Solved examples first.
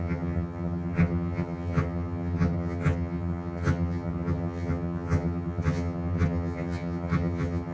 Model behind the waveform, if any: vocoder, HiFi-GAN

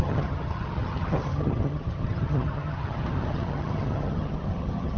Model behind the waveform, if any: vocoder, HiFi-GAN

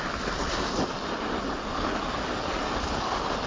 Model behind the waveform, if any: none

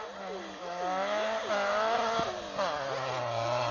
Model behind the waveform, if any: none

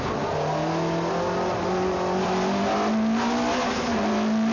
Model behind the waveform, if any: none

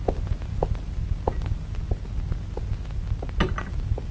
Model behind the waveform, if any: none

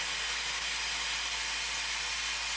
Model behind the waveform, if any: none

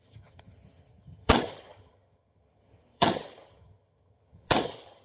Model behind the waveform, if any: vocoder, HiFi-GAN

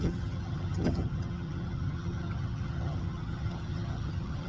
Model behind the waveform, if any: vocoder, HiFi-GAN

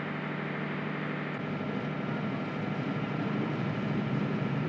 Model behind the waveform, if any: none